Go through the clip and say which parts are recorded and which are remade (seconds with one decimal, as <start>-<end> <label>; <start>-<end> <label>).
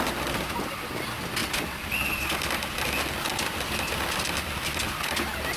0.0-1.4 recorded; 1.4-1.9 remade; 1.9-3.3 recorded; 3.3-5.1 remade; 5.1-5.6 recorded